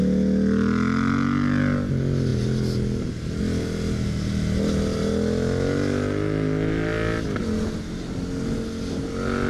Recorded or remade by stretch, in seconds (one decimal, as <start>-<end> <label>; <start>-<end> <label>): 0.0-9.5 recorded